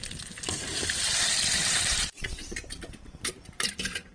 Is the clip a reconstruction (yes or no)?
yes